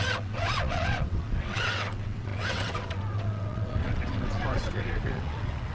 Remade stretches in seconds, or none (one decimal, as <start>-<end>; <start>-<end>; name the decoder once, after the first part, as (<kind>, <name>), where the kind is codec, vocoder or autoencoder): 0.0-5.7 (vocoder, WaveNeXt)